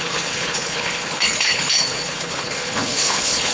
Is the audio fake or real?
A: fake